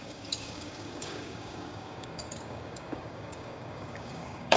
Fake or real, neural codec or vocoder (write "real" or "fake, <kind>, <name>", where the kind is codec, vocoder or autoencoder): fake, codec, DAC